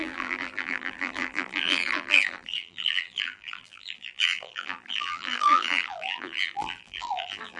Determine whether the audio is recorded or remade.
remade